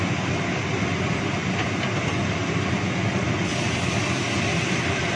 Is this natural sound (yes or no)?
yes